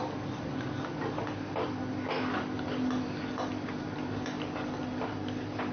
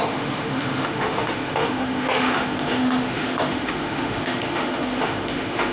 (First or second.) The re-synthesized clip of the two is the second